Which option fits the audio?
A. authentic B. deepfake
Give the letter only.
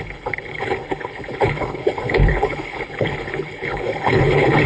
B